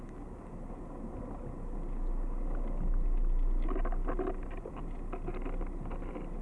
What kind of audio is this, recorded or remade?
recorded